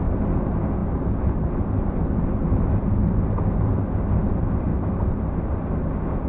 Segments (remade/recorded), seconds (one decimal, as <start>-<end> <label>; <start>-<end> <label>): 0.0-4.7 recorded; 4.7-5.6 remade; 5.6-6.3 recorded